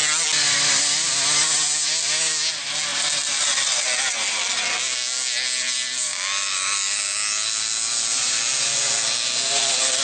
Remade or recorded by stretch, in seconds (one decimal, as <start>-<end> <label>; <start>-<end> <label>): 0.0-10.0 recorded